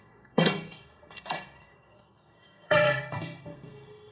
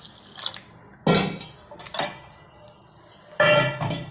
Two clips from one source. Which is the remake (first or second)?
first